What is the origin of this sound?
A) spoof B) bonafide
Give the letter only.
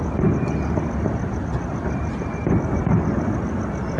B